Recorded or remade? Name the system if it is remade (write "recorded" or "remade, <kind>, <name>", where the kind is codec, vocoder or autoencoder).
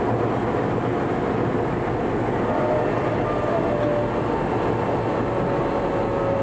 recorded